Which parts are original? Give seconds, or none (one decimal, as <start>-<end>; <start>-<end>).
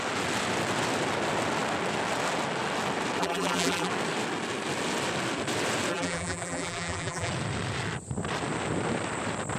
0.0-3.2; 3.9-5.9; 7.3-9.6